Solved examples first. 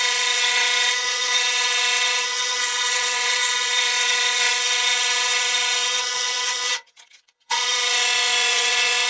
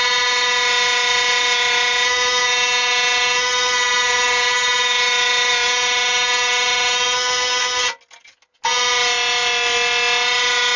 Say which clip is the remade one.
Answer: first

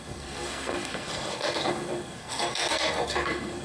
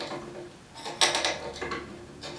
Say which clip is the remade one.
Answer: first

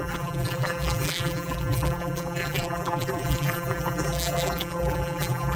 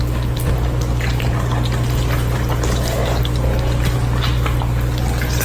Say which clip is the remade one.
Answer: first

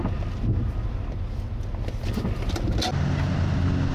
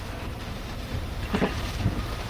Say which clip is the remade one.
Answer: second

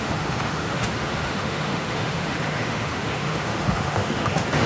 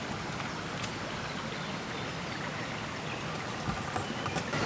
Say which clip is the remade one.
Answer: first